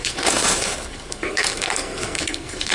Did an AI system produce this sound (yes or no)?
yes